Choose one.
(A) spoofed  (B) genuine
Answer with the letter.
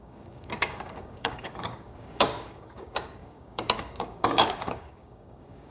A